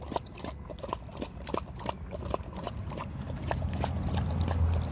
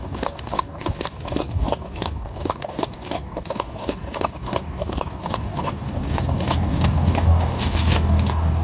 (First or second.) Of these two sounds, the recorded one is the first